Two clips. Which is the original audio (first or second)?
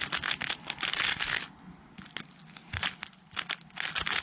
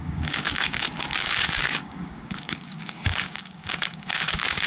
first